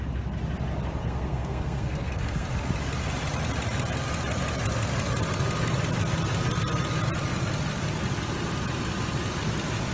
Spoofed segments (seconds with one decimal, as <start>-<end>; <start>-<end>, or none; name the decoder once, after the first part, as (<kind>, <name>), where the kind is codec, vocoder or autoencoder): 1.0-2.5 (codec, SNAC)